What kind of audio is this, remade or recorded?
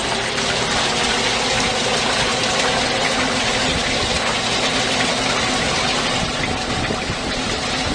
recorded